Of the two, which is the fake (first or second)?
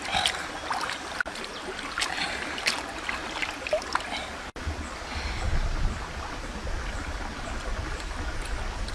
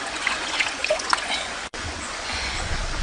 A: second